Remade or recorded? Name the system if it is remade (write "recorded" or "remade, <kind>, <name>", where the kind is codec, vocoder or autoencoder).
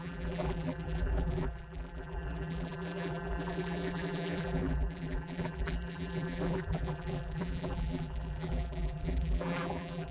remade, vocoder, BigVGAN v2